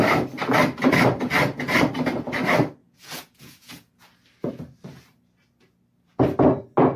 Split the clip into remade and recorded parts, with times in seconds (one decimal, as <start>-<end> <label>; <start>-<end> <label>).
0.0-2.8 recorded; 2.8-3.9 remade; 3.9-7.0 recorded